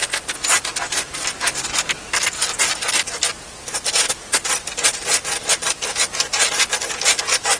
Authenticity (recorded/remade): recorded